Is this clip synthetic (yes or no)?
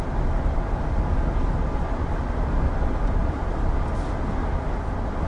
no